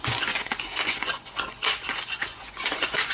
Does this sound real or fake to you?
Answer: fake